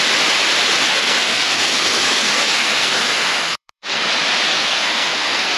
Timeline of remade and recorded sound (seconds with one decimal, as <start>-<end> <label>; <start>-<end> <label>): 0.0-0.9 recorded; 0.9-4.1 remade; 4.1-4.5 recorded; 4.5-5.6 remade

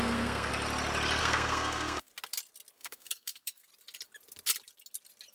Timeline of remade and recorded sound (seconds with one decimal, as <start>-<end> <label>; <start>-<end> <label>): 0.0-0.5 remade; 0.5-1.2 recorded; 1.2-2.1 remade; 2.1-2.7 recorded; 2.7-3.7 remade; 3.7-5.3 recorded

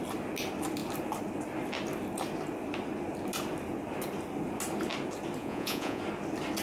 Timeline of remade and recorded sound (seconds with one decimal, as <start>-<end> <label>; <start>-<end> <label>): 0.0-5.4 recorded; 5.4-6.0 remade; 6.0-6.6 recorded